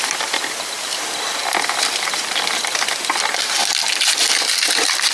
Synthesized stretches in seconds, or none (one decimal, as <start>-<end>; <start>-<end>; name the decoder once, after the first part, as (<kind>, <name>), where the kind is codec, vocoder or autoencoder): 0.0-1.4 (vocoder, BigVGAN v2); 4.5-5.1